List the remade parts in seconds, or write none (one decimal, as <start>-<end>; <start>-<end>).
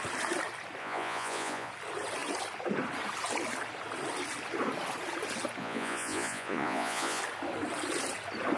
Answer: 0.8-1.7; 5.6-7.2